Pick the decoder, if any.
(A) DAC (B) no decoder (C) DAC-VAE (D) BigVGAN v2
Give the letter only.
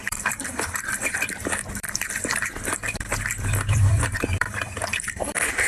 D